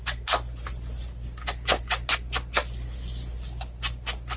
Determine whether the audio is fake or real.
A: real